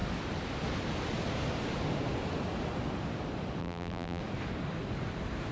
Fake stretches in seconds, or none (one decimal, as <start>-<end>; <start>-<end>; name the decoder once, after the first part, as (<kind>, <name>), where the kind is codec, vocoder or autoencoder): 3.6-4.2 (vocoder, BigVGAN v2)